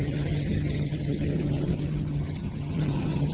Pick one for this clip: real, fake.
fake